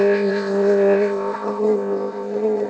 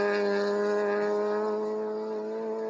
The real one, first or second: second